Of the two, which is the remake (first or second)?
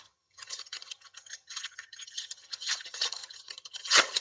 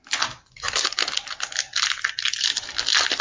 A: first